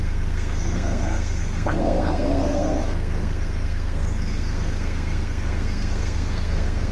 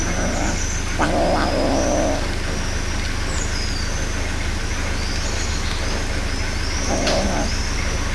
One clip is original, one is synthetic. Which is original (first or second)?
second